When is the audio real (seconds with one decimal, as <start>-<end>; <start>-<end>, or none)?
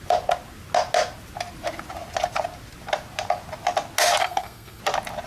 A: 0.0-4.2; 4.8-5.3